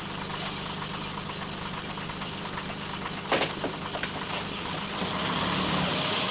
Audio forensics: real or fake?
real